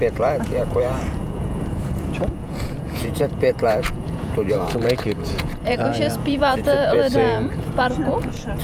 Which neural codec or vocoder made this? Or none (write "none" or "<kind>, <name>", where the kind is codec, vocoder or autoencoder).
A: vocoder, Vocos